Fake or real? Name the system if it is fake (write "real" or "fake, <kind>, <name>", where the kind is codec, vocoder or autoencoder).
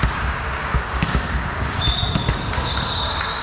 fake, codec, DAC